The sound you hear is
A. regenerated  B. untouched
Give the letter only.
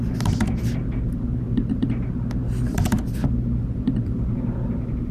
B